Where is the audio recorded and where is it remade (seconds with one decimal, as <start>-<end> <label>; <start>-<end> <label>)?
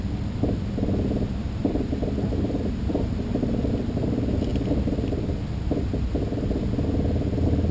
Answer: 0.0-1.4 recorded; 1.4-3.7 remade; 3.7-4.5 recorded; 4.5-5.3 remade; 5.3-7.7 recorded